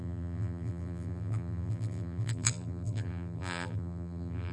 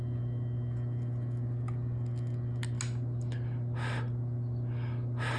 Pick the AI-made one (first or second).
first